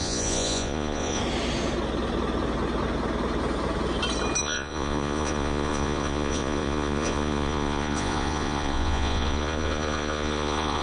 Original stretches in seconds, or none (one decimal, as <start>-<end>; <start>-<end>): 1.2-4.4